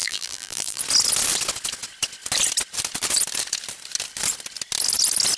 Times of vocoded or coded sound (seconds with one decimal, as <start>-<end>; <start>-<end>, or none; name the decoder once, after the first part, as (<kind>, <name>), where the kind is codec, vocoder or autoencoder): 0.0-0.8 (vocoder, BigVGAN v2)